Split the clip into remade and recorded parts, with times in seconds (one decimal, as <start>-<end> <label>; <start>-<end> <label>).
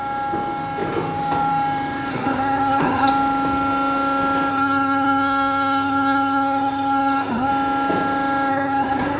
0.0-2.1 recorded; 2.1-3.1 remade; 3.1-4.5 recorded; 4.5-7.5 remade; 7.5-8.5 recorded; 8.5-9.2 remade